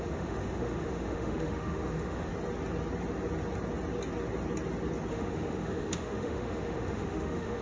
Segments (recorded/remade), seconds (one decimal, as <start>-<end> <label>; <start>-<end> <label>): 0.0-2.3 remade; 2.3-5.1 recorded; 5.1-7.6 remade